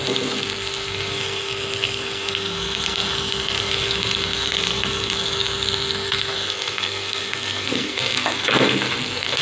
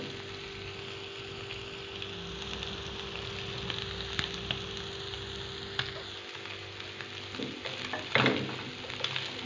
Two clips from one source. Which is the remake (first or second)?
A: first